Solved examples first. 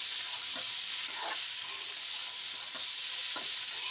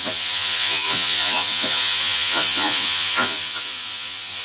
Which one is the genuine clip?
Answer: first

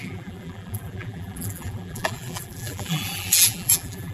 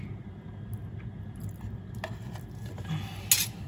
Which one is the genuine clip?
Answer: second